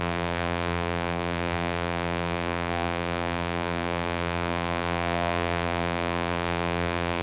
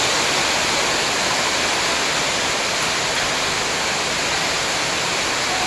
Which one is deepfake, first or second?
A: first